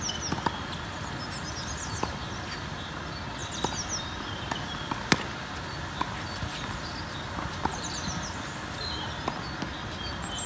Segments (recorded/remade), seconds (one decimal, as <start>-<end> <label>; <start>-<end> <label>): 0.0-10.5 recorded

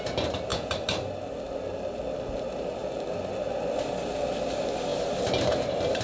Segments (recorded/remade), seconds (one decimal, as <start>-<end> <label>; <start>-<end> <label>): 0.0-6.0 recorded

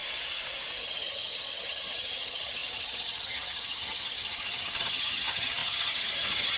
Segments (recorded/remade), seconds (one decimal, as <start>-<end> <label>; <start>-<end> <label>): 0.0-0.8 recorded; 0.8-6.6 remade

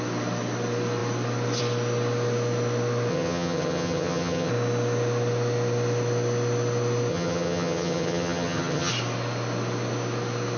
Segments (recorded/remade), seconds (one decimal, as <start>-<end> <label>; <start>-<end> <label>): 0.0-3.1 recorded; 3.1-4.5 remade; 4.5-7.1 recorded; 7.1-8.9 remade; 8.9-10.6 recorded

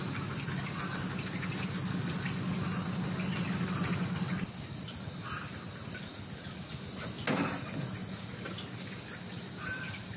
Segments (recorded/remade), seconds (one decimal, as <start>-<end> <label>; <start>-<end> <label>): 0.0-10.2 recorded